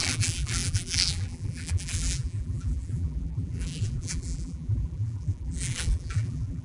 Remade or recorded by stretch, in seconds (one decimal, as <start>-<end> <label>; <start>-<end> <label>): 0.0-6.6 remade